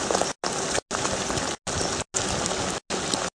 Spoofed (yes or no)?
no